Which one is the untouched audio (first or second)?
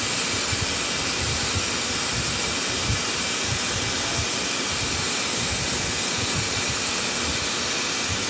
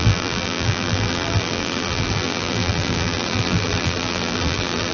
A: first